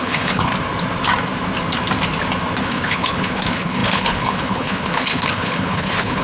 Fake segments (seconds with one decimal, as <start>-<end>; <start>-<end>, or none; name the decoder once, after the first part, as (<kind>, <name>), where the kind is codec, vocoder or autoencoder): 0.0-0.5 (codec, HILCodec); 2.6-6.2